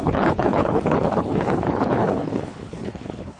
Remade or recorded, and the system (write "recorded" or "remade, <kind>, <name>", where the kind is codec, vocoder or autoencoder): remade, codec, HILCodec